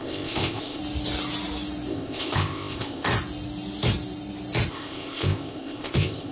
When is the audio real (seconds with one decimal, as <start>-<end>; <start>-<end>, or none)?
0.8-1.9; 3.1-4.7